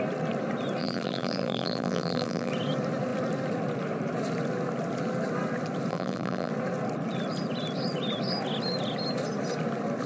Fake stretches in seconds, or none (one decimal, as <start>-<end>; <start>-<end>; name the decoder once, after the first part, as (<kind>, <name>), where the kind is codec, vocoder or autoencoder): 0.8-2.5 (vocoder, BigVGAN v2); 5.9-6.5